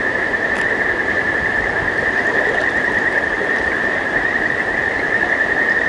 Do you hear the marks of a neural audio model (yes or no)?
yes